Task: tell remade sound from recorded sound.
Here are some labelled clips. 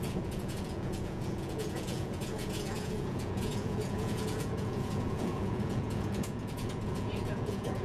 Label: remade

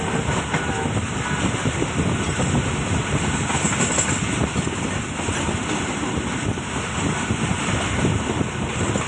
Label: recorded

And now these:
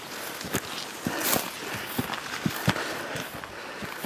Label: recorded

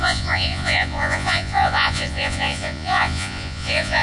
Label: remade